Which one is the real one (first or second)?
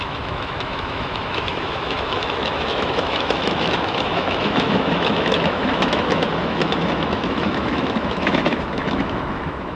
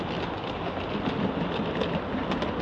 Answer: second